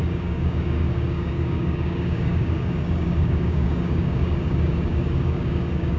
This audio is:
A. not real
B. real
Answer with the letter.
A